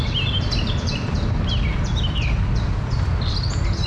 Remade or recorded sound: recorded